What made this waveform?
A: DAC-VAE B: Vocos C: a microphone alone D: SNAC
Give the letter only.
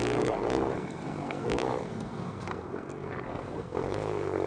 D